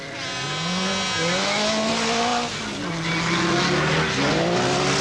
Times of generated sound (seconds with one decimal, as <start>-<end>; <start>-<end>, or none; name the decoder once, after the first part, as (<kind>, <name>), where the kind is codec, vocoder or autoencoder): 1.4-1.9 (autoencoder, DAC-VAE)